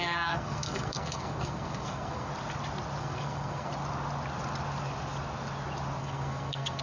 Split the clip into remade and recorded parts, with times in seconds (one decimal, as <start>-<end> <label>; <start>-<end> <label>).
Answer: 0.0-2.3 remade; 2.3-3.0 recorded; 3.0-3.7 remade; 3.7-6.0 recorded; 6.0-6.8 remade